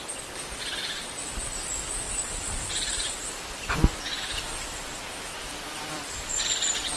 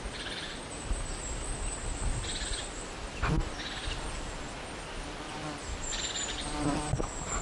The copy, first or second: first